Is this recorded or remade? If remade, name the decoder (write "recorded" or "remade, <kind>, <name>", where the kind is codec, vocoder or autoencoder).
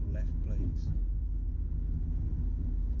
recorded